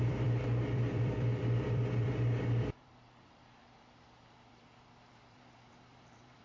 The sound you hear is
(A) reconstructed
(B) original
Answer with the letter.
A